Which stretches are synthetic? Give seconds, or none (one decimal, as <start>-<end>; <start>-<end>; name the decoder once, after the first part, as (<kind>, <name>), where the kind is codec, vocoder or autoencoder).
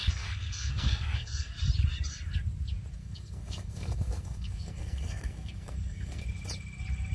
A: 0.0-1.5 (codec, SNAC); 3.0-6.2